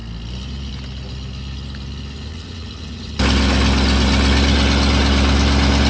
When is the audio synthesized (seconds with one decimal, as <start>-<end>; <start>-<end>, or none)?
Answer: 2.3-3.1